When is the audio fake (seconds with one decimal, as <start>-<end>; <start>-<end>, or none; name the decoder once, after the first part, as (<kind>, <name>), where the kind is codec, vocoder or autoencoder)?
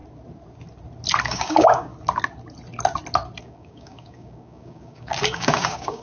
1.2-1.9 (codec, DAC); 3.4-6.0